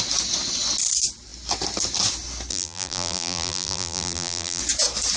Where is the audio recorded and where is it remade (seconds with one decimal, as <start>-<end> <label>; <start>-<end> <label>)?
0.0-2.5 recorded; 2.5-4.6 remade; 4.6-5.2 recorded